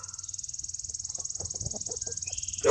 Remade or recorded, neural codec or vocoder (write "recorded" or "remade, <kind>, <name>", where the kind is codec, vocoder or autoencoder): recorded